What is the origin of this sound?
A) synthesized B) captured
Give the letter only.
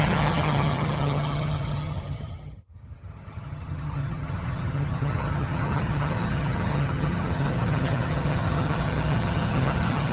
A